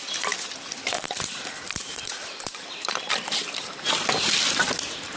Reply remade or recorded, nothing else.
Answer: remade